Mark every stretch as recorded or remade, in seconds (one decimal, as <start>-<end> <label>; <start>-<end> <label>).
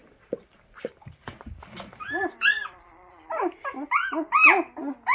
0.0-3.1 remade; 3.1-5.1 recorded